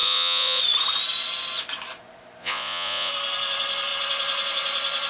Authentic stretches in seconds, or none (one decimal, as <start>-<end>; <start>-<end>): 0.6-2.4; 3.1-5.1